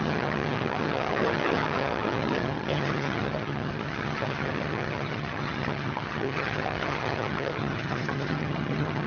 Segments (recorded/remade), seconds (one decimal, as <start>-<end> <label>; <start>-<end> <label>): 0.0-9.1 remade